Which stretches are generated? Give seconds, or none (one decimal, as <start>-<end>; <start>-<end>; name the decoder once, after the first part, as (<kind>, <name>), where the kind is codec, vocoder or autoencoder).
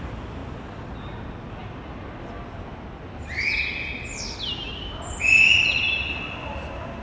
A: none